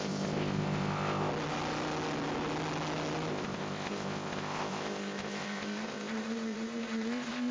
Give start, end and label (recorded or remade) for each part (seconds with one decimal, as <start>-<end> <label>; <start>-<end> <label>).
0.0-1.3 remade; 1.3-3.3 recorded; 3.3-7.5 remade